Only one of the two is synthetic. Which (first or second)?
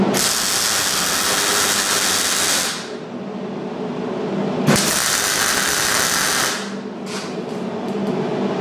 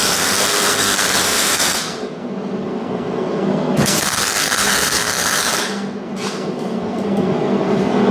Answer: second